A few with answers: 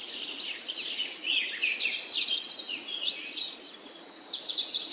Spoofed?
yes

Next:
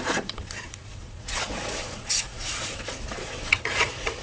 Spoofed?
yes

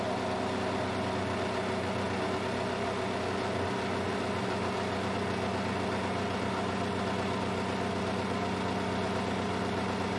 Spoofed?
no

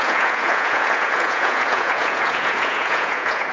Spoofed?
yes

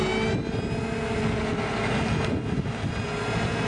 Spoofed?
no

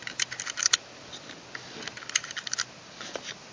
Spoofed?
no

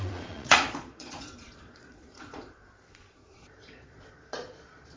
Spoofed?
yes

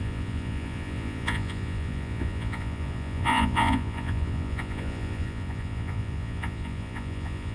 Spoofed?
yes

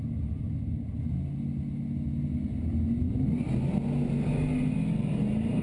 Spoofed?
no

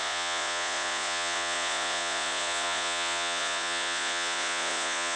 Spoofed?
yes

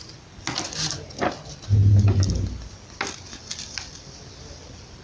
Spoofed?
no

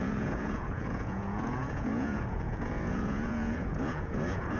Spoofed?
yes